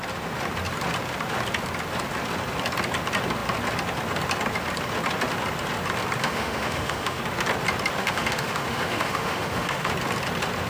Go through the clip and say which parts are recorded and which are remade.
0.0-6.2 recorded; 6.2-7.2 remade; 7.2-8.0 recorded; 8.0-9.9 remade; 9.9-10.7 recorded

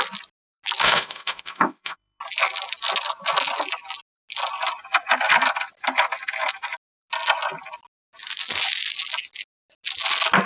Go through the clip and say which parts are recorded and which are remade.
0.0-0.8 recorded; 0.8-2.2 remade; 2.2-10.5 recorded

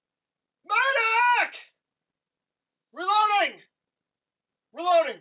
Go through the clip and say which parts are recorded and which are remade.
0.0-2.7 recorded; 2.7-3.4 remade; 3.4-5.2 recorded

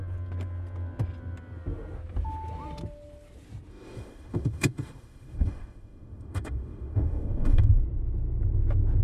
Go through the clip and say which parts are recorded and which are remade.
0.0-3.7 recorded; 3.7-7.8 remade; 7.8-9.0 recorded

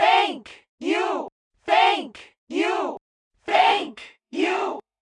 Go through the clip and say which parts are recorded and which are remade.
0.0-3.5 recorded; 3.5-5.0 remade

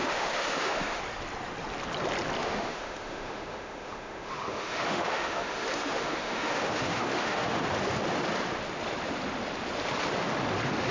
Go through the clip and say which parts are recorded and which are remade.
0.0-1.0 remade; 1.0-2.4 recorded; 2.4-7.6 remade; 7.6-10.9 recorded

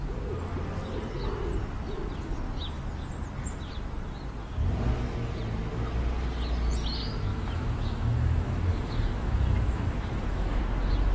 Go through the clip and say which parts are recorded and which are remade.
0.0-7.3 recorded; 7.3-10.6 remade; 10.6-11.1 recorded

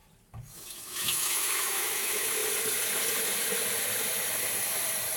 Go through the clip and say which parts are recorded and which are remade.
0.0-0.5 recorded; 0.5-2.4 remade; 2.4-5.2 recorded